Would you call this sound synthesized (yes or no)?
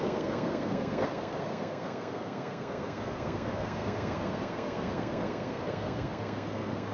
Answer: yes